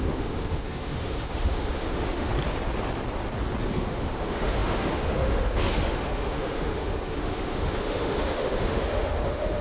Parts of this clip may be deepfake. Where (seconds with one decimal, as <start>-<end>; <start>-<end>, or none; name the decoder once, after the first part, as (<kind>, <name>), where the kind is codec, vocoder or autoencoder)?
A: 0.0-2.3 (autoencoder, DAC-VAE); 3.7-9.6